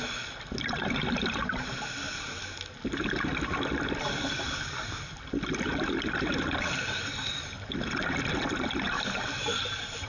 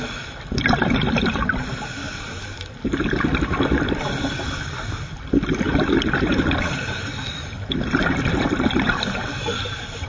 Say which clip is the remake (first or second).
second